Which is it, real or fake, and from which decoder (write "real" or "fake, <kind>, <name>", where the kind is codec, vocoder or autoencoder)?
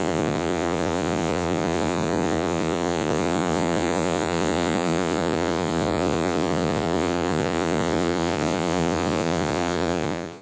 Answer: fake, vocoder, Vocos